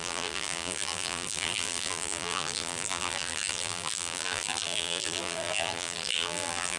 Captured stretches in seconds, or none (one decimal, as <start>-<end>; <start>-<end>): none